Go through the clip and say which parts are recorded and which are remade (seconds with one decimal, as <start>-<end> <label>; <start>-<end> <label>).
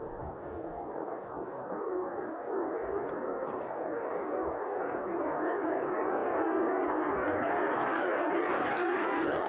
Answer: 0.0-9.5 remade